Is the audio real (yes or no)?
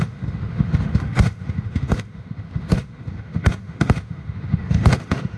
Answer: no